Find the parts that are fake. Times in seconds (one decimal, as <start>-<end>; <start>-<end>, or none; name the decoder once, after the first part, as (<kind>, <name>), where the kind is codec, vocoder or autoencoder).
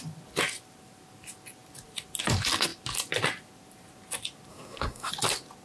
4.5-5.1 (codec, SNAC)